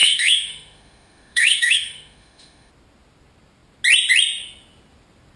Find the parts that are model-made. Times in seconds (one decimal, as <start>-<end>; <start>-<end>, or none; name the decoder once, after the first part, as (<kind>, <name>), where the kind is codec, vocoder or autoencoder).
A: 0.0-2.7 (autoencoder, DAC-VAE)